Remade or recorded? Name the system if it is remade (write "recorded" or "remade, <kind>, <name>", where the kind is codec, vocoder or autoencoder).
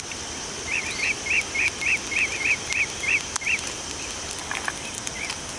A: recorded